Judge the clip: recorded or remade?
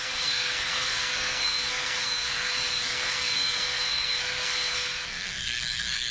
remade